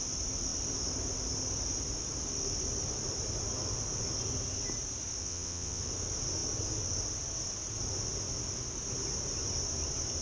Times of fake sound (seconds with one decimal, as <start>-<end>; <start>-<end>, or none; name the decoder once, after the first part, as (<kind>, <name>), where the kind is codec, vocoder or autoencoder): 5.2-5.8 (vocoder, WaveNeXt)